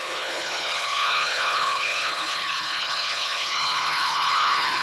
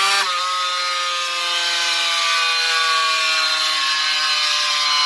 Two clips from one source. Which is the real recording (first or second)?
second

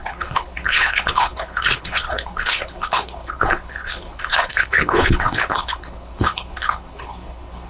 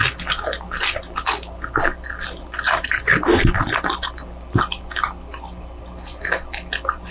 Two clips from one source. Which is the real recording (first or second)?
second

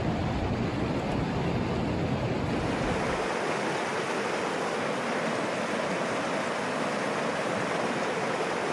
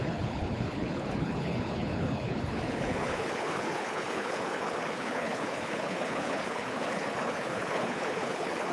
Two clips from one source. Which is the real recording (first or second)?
first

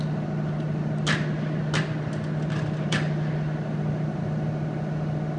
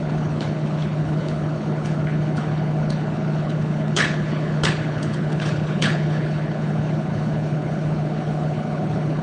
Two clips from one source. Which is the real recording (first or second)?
first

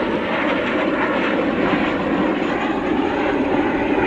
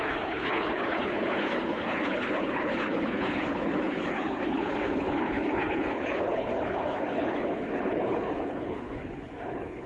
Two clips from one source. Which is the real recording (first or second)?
first